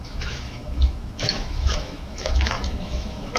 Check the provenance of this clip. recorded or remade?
remade